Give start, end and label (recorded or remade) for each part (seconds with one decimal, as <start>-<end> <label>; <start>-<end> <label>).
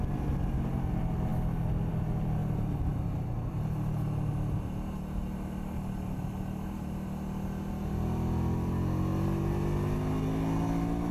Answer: 0.0-11.1 recorded